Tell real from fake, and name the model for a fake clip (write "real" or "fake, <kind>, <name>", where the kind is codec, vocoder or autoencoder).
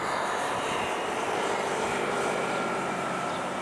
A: fake, vocoder, BigVGAN v2